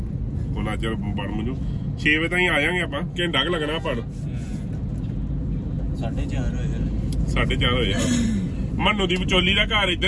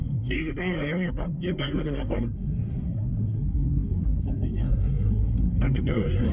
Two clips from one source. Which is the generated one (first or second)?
second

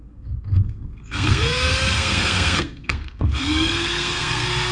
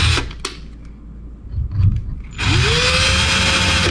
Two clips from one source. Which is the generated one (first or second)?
first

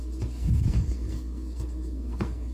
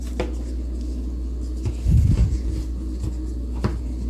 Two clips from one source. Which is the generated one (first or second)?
first